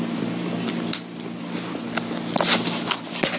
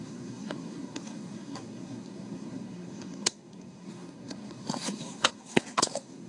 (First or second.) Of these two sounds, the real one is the first